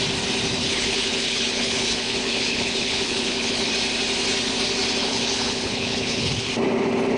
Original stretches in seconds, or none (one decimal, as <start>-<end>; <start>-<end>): 0.0-0.6; 3.7-5.0; 6.5-7.2